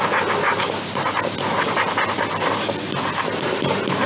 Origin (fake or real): real